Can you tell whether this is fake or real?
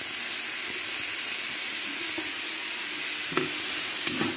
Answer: real